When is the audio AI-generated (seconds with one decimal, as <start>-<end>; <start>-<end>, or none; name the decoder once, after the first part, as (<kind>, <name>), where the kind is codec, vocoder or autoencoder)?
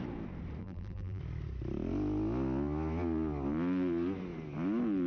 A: 0.6-1.2 (vocoder, BigVGAN v2)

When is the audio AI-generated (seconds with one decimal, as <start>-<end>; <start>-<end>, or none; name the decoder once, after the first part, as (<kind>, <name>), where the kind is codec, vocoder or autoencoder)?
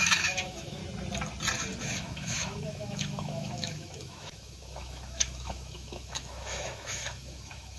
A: 0.0-0.8 (autoencoder, DAC-VAE); 1.8-7.8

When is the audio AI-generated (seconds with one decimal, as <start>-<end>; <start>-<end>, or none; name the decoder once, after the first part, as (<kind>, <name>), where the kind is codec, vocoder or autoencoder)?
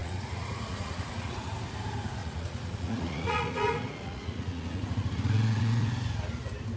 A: 0.0-1.5 (vocoder, Vocos); 2.2-5.9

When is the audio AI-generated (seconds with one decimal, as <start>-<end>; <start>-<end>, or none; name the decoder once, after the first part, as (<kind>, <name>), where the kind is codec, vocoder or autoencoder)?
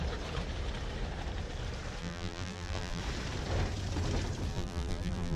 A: 2.0-3.0 (vocoder, BigVGAN v2); 4.5-5.4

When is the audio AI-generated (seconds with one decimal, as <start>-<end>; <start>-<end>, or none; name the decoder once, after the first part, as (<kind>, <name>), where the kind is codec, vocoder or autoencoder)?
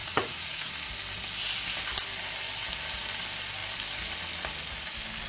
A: 0.0-0.7 (vocoder, Vocos)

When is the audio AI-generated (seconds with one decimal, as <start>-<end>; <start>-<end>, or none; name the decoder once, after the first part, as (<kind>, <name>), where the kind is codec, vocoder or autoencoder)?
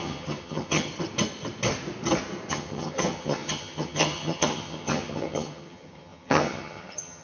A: 0.0-0.9 (vocoder, HiFi-GAN); 2.5-7.2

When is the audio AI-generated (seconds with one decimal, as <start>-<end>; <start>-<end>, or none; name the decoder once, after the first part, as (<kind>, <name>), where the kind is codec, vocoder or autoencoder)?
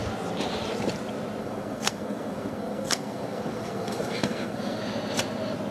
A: 1.4-4.8 (codec, SNAC)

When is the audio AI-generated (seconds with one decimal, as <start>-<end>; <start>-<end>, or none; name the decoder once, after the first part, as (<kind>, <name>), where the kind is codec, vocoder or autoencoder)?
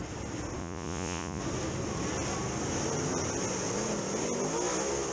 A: 0.6-1.4 (vocoder, Vocos)